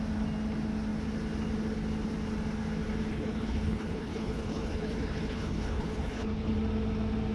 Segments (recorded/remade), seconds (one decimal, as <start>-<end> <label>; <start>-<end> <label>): 0.0-3.1 recorded; 3.1-6.6 remade; 6.6-7.3 recorded